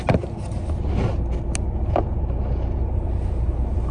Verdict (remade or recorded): recorded